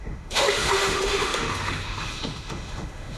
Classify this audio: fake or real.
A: fake